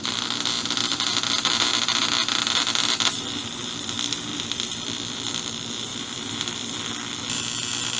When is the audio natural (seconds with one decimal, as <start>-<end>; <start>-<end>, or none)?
0.0-4.3; 5.3-5.9; 6.9-8.0

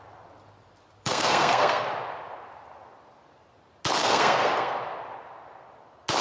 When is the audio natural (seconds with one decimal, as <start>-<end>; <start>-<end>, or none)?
0.0-1.0; 1.9-4.0; 4.8-6.2

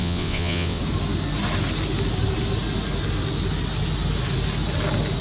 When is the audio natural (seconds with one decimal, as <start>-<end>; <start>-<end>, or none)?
0.8-5.2

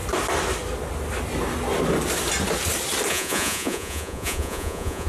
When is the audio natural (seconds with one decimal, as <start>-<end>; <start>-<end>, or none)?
0.0-3.1

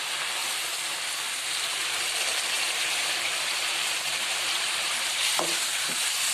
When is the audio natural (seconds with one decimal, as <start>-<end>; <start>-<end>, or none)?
0.0-0.4; 1.4-2.3

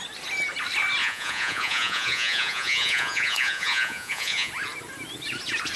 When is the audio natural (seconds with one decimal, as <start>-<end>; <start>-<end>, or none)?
0.0-1.0; 4.5-5.8